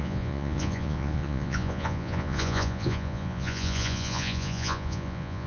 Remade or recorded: remade